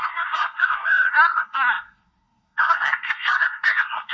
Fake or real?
fake